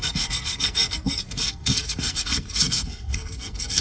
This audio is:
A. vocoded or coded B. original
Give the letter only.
A